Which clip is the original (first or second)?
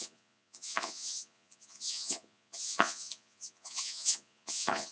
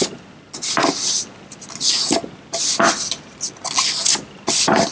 second